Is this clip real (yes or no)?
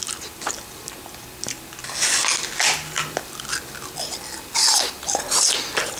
yes